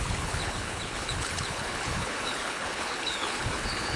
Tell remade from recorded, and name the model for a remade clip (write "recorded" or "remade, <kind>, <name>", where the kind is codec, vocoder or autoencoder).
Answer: remade, codec, HILCodec